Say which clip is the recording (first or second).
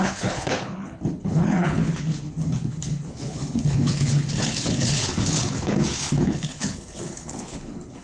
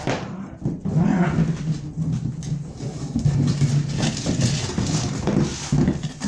second